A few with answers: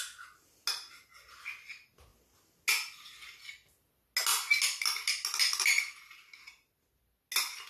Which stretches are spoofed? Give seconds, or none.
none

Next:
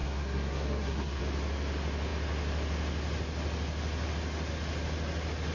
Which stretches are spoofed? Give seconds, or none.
0.0-1.2

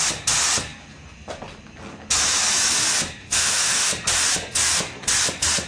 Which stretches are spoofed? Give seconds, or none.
3.2-3.9

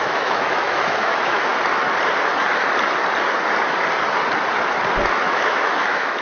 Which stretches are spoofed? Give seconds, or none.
0.0-1.5; 5.2-6.2

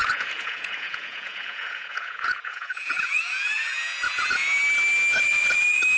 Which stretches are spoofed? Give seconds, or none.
0.0-4.6; 5.2-6.0

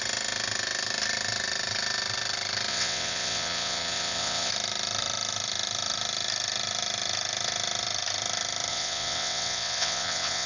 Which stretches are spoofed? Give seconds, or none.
2.7-4.5; 8.7-10.5